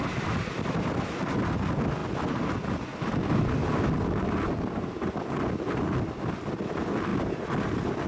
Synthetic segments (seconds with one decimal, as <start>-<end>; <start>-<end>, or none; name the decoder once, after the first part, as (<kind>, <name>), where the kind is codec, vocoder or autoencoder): none